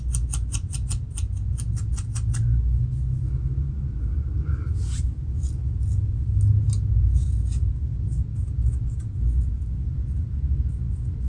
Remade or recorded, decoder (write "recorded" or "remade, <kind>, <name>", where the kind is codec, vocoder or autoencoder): recorded